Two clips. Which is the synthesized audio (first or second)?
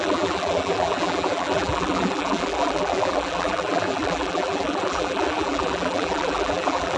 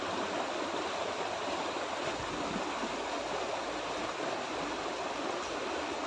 first